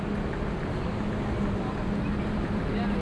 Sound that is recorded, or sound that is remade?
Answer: recorded